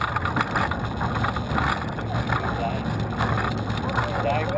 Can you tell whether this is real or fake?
real